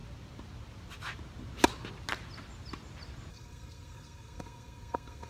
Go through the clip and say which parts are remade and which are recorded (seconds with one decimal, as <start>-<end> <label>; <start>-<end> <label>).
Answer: 0.0-3.3 recorded; 3.3-5.3 remade